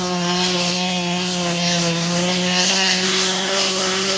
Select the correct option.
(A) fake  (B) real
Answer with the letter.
A